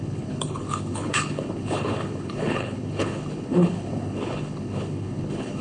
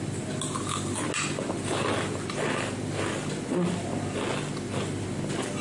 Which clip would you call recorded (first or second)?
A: second